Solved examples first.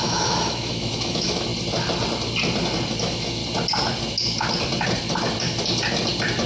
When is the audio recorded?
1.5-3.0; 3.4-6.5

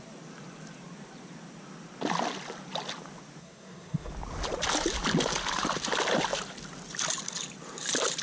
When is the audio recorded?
0.0-3.4; 4.1-8.2

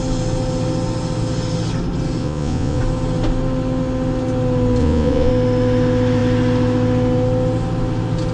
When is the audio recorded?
0.0-2.2; 2.8-4.8; 5.3-8.3

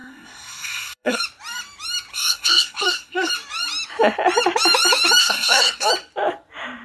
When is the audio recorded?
1.2-2.1; 3.3-5.2; 5.9-6.8

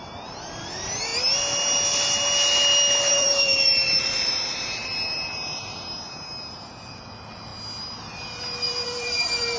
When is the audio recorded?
1.1-3.1; 7.5-8.0